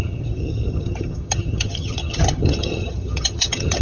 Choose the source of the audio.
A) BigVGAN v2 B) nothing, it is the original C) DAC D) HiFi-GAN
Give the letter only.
D